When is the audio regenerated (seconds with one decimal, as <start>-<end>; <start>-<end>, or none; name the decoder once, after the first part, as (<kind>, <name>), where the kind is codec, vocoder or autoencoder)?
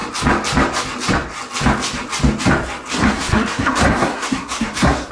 2.9-5.1 (codec, SNAC)